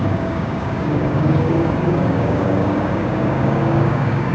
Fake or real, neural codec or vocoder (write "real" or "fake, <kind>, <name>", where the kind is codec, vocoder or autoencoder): fake, codec, DAC